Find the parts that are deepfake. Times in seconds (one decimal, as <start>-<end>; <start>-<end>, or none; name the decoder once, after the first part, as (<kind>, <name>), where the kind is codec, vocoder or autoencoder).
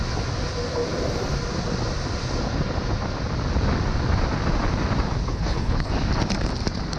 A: 5.3-5.9 (codec, HILCodec)